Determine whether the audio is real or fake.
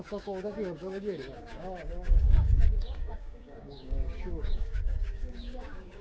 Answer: fake